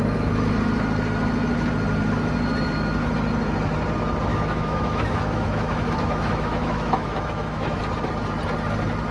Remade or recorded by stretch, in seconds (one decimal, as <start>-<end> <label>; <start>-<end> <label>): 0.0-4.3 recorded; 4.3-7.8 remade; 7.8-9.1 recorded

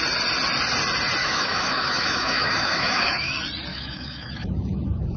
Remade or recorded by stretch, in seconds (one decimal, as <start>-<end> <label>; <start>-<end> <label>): 0.0-1.2 recorded; 1.2-3.3 remade; 3.3-3.7 recorded; 3.7-5.2 remade

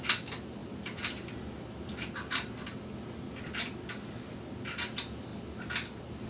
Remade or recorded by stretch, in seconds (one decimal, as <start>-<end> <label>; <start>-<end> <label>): 0.0-6.3 recorded

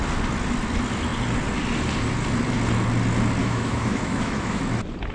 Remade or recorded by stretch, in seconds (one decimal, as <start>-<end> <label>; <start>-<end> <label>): 0.0-3.4 recorded; 3.4-4.6 remade; 4.6-5.1 recorded